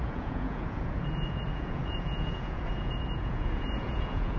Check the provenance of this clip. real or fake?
fake